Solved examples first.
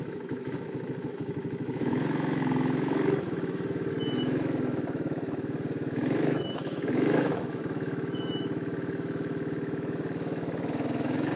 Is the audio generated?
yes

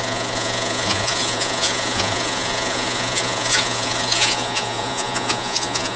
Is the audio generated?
yes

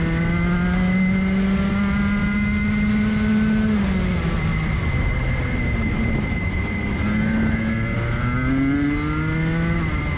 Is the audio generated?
no